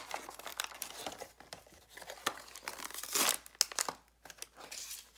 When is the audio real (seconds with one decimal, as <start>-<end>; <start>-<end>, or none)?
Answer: 0.0-0.5; 2.8-5.2